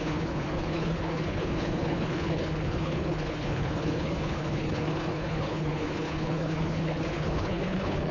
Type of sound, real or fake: fake